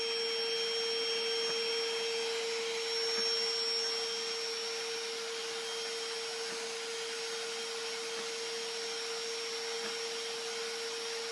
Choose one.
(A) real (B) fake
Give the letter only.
A